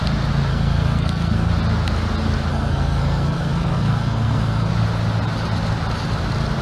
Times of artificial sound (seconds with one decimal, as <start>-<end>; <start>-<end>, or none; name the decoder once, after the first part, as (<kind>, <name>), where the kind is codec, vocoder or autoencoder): 0.5-1.5 (codec, SNAC); 2.5-4.7